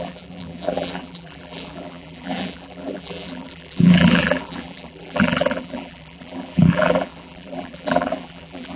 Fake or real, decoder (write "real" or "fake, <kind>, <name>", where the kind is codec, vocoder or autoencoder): fake, vocoder, BigVGAN v2